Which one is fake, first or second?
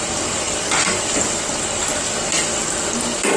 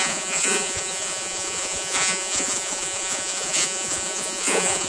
second